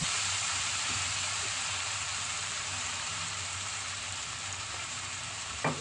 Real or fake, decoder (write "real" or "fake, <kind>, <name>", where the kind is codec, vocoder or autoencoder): fake, vocoder, BigVGAN v2